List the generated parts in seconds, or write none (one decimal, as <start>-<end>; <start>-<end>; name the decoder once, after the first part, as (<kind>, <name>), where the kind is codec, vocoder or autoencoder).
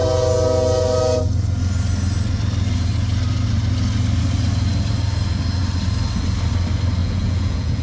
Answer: 7.0-7.8 (vocoder, Vocos)